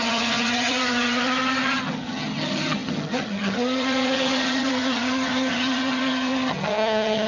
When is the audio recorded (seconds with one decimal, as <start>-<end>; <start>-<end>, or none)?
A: none